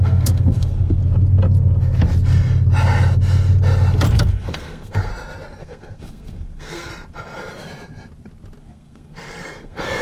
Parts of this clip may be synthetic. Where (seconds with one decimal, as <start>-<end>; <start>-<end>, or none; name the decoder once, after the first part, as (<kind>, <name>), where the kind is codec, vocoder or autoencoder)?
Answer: 0.0-1.0 (codec, SNAC); 4.1-5.1; 5.6-6.9; 8.6-10.0